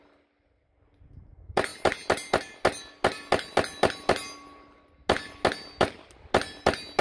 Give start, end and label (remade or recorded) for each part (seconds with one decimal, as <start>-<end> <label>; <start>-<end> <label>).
0.0-7.0 recorded

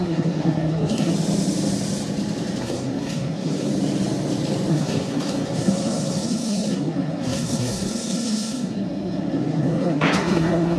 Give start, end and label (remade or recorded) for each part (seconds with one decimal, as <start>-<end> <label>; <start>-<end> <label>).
0.0-1.1 remade; 1.1-2.6 recorded; 2.6-3.7 remade; 3.7-4.7 recorded; 4.7-10.8 remade

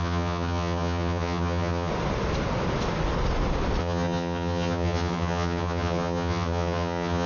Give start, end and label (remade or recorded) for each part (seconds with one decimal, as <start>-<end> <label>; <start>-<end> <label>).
0.0-1.9 remade; 1.9-3.8 recorded; 3.8-7.3 remade

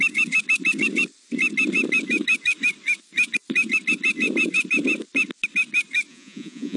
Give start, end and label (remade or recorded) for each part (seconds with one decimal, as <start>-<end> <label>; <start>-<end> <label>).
0.0-6.1 recorded; 6.1-6.8 remade